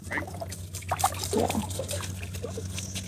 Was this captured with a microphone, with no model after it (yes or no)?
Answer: yes